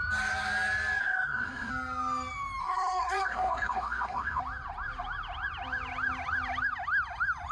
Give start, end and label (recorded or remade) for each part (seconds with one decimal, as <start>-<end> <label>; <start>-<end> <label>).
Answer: 0.0-1.0 recorded; 1.0-1.7 remade; 1.7-2.6 recorded; 2.6-4.4 remade; 4.4-7.5 recorded